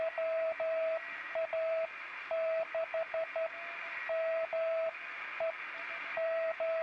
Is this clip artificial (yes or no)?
no